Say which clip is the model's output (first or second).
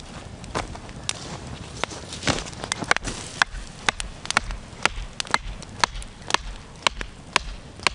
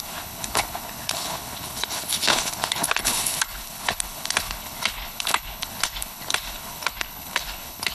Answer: second